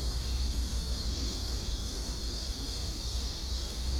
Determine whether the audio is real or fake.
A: fake